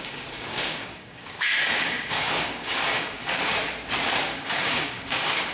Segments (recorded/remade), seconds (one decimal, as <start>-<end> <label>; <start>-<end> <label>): 0.0-3.6 remade; 3.6-4.2 recorded; 4.2-5.5 remade